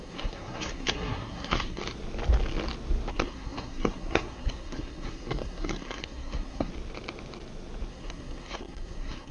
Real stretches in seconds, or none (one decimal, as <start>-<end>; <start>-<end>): 1.8-3.1; 6.7-7.9